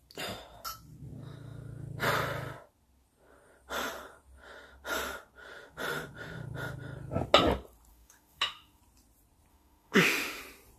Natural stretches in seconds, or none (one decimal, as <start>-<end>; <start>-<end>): 0.0-7.9; 8.8-9.5; 10.4-10.8